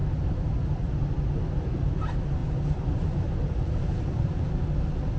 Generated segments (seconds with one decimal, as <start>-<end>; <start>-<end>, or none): 0.0-0.9; 2.4-4.5